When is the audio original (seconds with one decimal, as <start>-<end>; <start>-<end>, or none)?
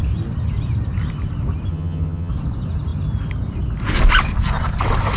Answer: 0.0-1.7; 2.3-5.2